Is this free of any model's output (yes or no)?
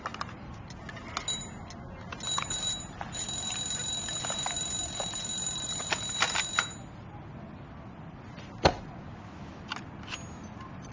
yes